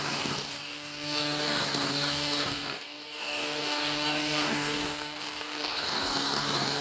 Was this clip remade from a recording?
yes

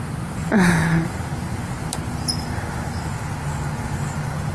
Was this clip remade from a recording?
no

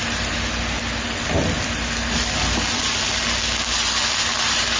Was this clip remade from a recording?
no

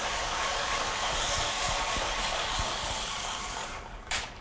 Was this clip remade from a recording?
yes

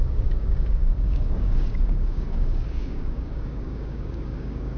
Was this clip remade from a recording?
yes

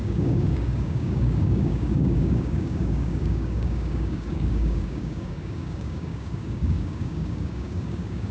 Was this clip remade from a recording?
yes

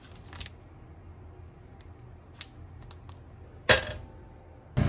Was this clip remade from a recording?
no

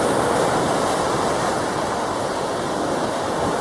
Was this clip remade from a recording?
no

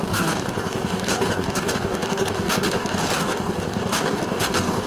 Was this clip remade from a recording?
yes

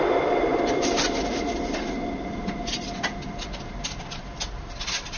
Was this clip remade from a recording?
no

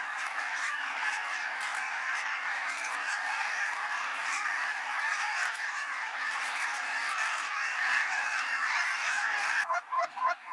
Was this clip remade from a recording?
yes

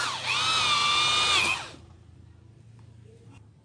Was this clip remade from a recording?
no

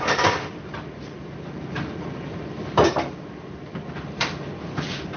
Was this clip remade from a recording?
no